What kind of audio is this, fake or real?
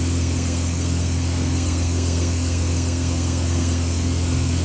fake